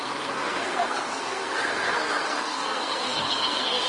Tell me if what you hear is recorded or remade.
remade